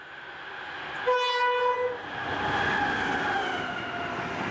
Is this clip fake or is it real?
real